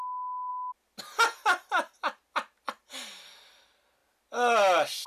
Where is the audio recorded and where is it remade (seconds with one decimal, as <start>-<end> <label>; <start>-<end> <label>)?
0.0-5.1 recorded